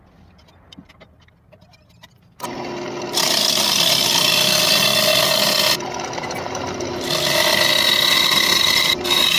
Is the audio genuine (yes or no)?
yes